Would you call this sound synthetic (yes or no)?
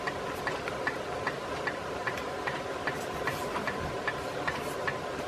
no